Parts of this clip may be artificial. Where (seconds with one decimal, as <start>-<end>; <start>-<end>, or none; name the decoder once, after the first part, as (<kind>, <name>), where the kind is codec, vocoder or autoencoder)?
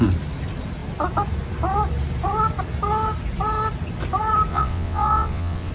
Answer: 4.5-5.7 (vocoder, WaveNeXt)